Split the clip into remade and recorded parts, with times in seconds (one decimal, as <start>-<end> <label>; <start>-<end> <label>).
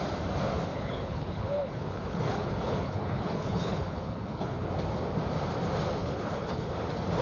0.0-0.7 recorded; 0.7-4.7 remade; 4.7-6.0 recorded; 6.0-6.7 remade; 6.7-7.2 recorded